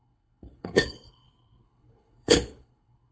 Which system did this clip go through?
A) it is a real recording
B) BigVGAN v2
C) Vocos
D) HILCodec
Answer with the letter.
D